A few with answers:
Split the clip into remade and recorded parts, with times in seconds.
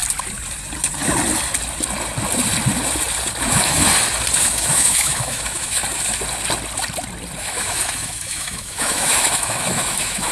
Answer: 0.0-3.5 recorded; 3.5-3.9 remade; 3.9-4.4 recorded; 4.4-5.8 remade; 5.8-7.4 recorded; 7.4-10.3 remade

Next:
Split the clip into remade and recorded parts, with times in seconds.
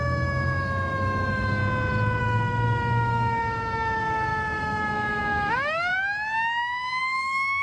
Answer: 0.0-1.6 remade; 1.6-2.2 recorded; 2.2-5.9 remade; 5.9-7.0 recorded; 7.0-7.6 remade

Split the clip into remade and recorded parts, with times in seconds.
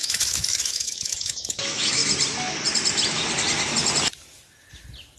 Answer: 0.0-2.0 remade; 2.0-5.2 recorded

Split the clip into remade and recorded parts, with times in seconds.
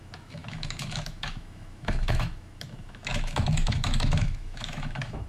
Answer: 0.0-5.3 remade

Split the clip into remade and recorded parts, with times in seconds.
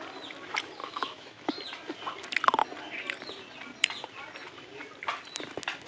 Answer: 0.0-0.8 recorded; 0.8-1.5 remade; 1.5-5.9 recorded